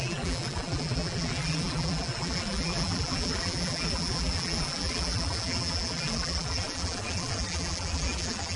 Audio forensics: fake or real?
fake